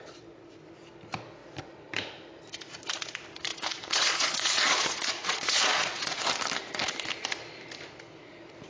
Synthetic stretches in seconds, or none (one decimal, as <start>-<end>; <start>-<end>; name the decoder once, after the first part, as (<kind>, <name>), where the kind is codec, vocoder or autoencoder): 3.5-6.3 (vocoder, Vocos)